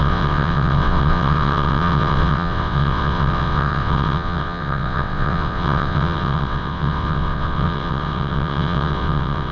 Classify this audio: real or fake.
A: fake